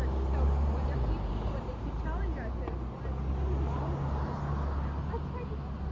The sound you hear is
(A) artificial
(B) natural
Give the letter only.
B